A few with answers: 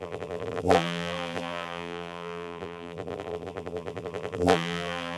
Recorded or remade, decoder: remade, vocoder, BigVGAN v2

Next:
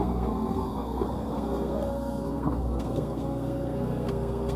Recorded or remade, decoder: remade, codec, SNAC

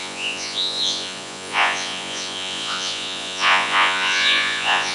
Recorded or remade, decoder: remade, vocoder, Vocos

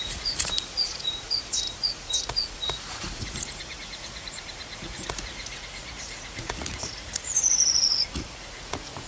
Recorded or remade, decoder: remade, vocoder, Vocos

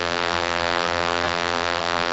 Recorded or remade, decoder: remade, vocoder, BigVGAN v2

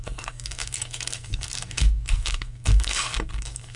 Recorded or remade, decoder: remade, codec, SNAC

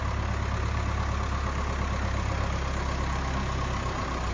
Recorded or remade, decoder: recorded